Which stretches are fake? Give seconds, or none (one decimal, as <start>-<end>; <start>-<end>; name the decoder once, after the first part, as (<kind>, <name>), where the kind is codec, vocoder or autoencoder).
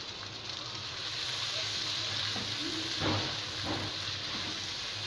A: none